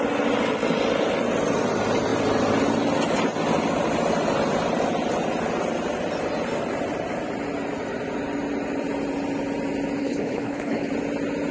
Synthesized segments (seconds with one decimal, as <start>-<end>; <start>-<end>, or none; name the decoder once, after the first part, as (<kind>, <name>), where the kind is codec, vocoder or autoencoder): 10.0-10.9 (codec, HILCodec)